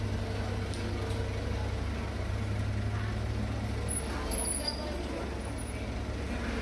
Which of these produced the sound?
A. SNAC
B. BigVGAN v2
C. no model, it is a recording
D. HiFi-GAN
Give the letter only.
C